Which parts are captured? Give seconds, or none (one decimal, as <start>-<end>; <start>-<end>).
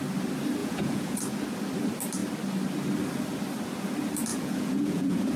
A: 0.0-0.6; 1.2-4.3